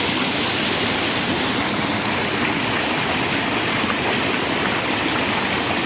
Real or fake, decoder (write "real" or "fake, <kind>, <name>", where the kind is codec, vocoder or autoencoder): real